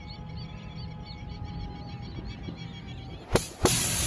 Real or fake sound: real